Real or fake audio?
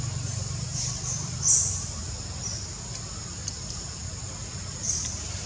real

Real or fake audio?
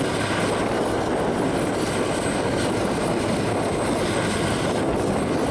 real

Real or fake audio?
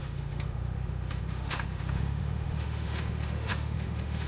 fake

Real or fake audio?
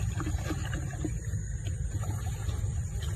real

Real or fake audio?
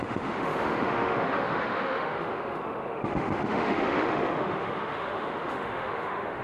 fake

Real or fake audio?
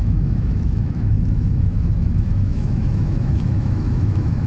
fake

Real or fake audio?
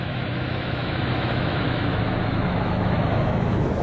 fake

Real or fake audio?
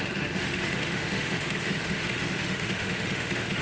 fake